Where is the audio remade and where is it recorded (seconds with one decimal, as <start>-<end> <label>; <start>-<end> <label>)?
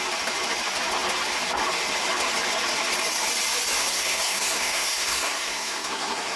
0.0-3.8 recorded; 3.8-6.4 remade